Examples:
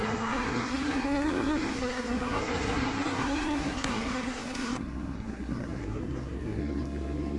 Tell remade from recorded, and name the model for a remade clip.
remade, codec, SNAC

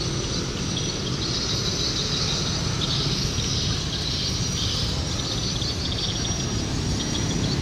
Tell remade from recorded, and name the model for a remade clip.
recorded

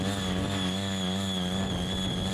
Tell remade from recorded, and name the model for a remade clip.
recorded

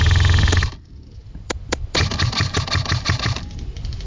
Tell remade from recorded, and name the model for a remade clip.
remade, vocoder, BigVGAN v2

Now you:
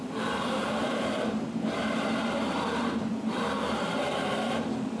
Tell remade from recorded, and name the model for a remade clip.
remade, vocoder, BigVGAN v2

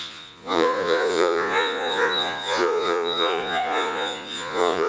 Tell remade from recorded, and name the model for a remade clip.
remade, vocoder, Vocos